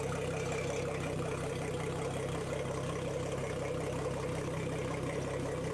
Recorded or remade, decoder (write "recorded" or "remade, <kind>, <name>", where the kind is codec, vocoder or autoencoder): recorded